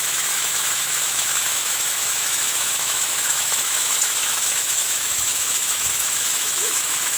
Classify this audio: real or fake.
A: fake